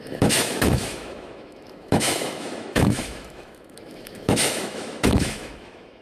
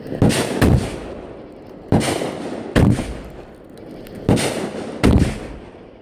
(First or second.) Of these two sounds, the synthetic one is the first